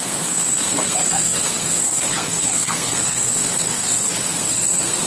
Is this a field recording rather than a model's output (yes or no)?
no